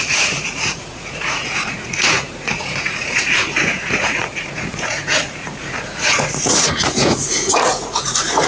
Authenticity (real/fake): fake